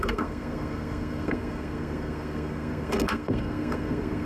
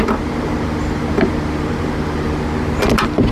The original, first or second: second